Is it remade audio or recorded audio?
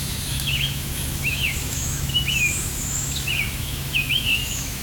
remade